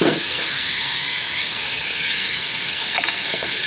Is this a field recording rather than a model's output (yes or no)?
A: no